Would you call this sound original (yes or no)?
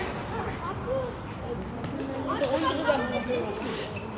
yes